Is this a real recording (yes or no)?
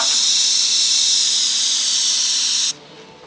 yes